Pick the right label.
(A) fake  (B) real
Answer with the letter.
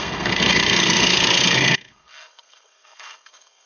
A